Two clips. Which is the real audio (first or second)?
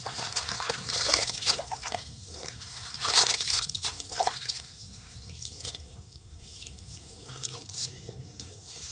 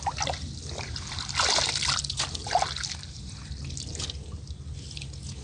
second